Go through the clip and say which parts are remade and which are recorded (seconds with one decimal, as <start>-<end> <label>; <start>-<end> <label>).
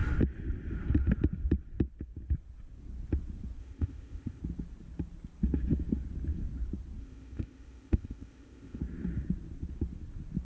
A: 0.0-3.6 recorded; 3.6-4.4 remade; 4.4-7.0 recorded; 7.0-8.8 remade; 8.8-10.4 recorded